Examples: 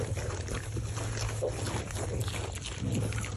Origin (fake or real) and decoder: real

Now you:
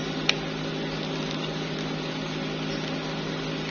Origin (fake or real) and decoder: real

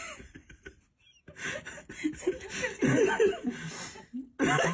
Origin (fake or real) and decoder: real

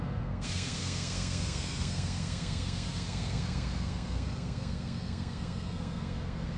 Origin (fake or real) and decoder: fake, codec, SNAC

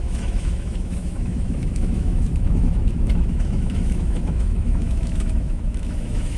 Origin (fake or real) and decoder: fake, autoencoder, DAC-VAE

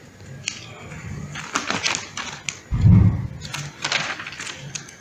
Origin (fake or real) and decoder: real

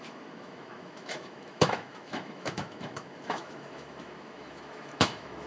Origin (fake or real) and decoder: fake, autoencoder, DAC-VAE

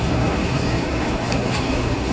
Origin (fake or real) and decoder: fake, codec, SNAC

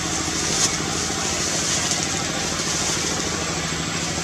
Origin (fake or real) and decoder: real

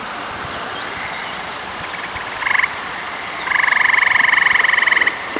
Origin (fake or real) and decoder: fake, vocoder, BigVGAN v2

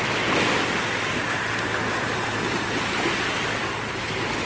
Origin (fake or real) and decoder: real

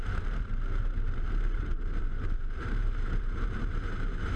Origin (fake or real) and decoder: fake, vocoder, BigVGAN v2